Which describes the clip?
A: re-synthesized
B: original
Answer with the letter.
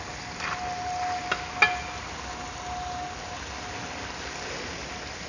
B